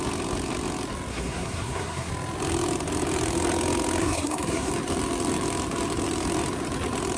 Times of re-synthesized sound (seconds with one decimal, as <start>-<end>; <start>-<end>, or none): 1.1-2.1; 4.0-4.7